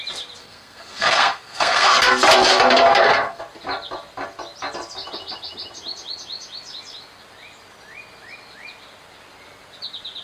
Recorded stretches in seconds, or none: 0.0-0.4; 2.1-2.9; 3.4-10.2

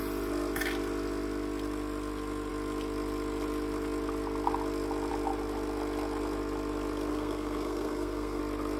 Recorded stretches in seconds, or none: 0.0-7.1; 8.4-8.8